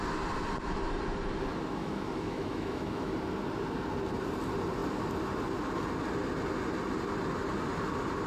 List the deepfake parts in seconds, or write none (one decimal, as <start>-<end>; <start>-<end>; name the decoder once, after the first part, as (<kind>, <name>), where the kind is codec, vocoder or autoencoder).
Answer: 1.8-3.1 (autoencoder, DAC-VAE)